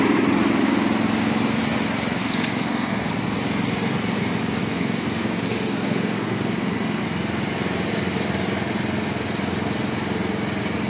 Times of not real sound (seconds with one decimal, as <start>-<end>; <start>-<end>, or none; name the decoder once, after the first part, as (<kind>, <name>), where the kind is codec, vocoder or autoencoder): 2.2-3.1 (codec, SNAC); 4.6-7.0